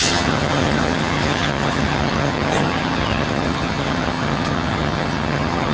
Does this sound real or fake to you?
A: fake